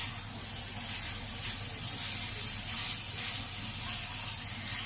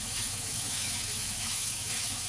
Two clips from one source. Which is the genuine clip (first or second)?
first